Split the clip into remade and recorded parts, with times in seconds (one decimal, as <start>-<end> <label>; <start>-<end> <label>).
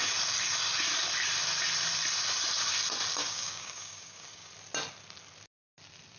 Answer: 0.0-3.2 recorded; 3.2-4.5 remade; 4.5-6.2 recorded